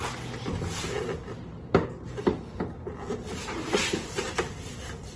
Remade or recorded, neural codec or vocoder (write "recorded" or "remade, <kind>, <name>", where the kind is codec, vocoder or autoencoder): recorded